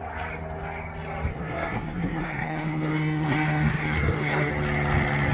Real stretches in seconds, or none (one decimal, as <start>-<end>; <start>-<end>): 0.0-1.3; 4.5-5.3